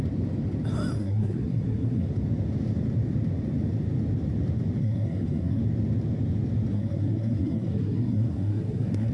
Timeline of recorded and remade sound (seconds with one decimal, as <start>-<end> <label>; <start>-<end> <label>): 0.0-1.0 recorded; 1.0-2.1 remade; 2.1-4.8 recorded; 4.8-5.6 remade; 5.6-6.7 recorded; 6.7-9.1 remade